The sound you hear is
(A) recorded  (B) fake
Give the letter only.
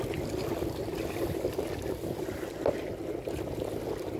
A